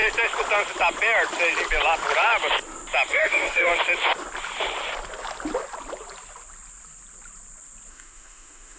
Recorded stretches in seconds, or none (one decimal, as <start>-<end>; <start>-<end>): 0.0-3.1; 3.7-7.9